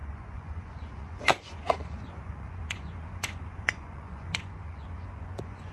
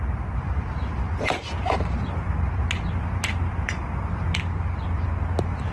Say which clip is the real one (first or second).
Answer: second